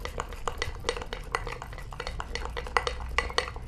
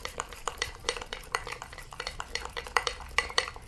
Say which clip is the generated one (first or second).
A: second